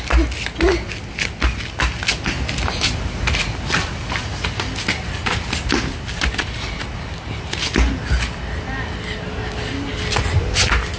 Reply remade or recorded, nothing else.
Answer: recorded